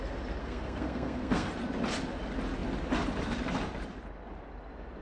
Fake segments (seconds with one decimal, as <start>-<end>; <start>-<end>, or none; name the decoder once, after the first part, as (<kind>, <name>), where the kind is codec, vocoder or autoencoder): 0.4-1.5 (codec, SNAC)